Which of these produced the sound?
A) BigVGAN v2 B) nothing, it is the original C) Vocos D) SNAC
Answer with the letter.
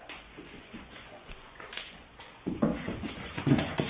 C